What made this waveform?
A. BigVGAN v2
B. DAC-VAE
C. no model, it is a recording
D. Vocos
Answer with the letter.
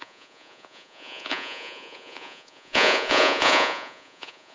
D